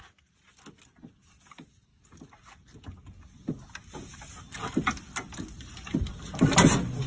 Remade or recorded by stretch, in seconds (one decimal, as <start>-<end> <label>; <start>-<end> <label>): 0.0-7.1 recorded